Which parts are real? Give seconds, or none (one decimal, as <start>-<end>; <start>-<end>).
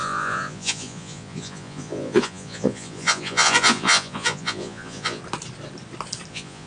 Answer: 5.2-6.3